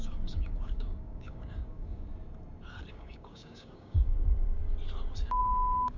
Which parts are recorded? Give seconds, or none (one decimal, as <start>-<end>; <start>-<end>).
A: 2.1-2.9; 4.6-5.4

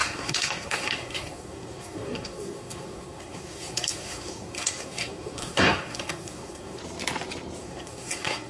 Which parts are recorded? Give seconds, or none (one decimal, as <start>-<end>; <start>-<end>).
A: 6.8-7.6

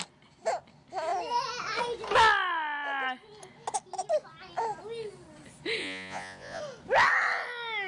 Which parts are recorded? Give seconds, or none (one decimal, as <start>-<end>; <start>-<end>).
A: 0.0-5.8; 6.6-7.9

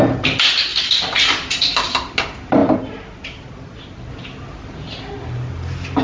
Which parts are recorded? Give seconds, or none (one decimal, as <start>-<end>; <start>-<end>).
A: 0.0-6.0

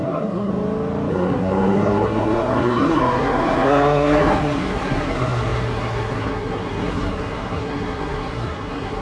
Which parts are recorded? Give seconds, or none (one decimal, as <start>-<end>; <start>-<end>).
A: 0.5-1.1